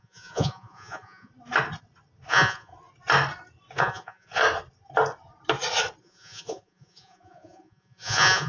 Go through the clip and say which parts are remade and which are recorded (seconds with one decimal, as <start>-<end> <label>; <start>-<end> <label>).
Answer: 0.0-1.3 remade; 1.3-2.3 recorded; 2.3-2.7 remade; 2.7-3.8 recorded; 3.8-4.4 remade; 4.4-6.0 recorded; 6.0-8.5 remade